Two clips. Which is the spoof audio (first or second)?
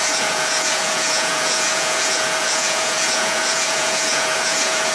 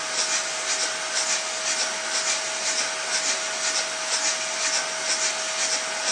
first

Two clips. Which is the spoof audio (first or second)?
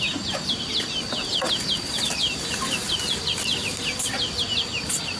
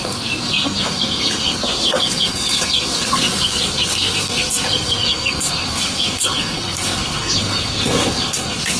second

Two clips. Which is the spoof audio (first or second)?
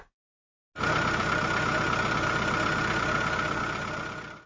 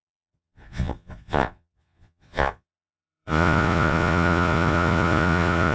second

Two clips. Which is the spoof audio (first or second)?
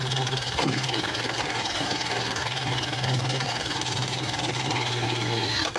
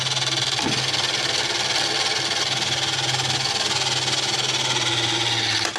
first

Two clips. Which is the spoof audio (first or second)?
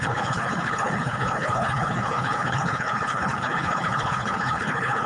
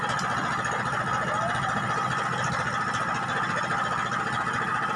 first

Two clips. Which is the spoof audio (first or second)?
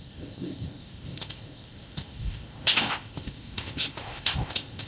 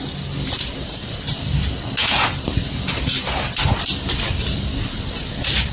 first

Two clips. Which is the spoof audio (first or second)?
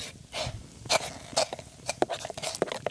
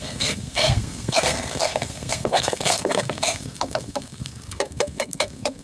second